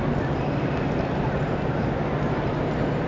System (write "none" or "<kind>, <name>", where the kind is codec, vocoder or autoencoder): none